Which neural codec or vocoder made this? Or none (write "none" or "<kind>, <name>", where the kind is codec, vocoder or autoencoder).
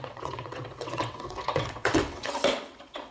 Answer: vocoder, WaveNeXt